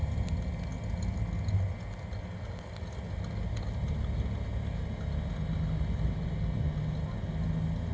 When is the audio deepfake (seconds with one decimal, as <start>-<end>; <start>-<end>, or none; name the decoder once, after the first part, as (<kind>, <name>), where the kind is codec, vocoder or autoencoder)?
none